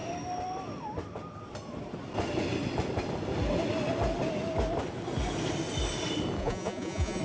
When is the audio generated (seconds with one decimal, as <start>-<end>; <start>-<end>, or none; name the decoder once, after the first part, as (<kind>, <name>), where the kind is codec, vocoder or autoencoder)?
6.4-7.2 (vocoder, Vocos)